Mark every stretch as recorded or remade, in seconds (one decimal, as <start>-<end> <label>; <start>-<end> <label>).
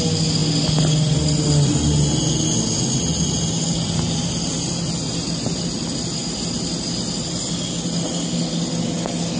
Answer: 0.0-9.4 recorded